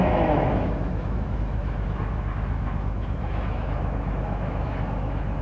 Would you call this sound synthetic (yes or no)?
yes